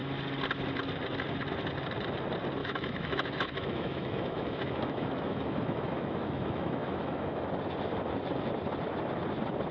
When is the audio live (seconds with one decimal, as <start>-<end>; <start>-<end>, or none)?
0.0-2.6; 7.5-9.7